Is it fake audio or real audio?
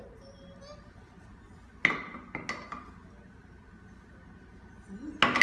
real